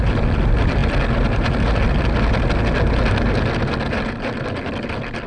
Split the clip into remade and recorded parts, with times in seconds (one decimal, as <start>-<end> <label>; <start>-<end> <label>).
0.0-5.3 recorded